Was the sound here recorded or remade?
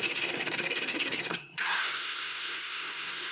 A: remade